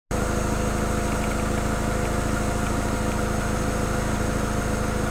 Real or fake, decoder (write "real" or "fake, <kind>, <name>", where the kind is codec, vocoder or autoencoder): real